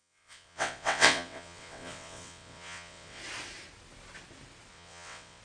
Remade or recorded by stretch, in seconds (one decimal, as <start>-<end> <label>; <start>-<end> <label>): 0.0-3.2 remade; 3.2-4.7 recorded; 4.7-5.4 remade